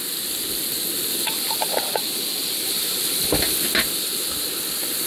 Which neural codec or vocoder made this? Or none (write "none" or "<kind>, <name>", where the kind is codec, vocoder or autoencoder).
none